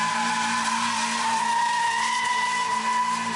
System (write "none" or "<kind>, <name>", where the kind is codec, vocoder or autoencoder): none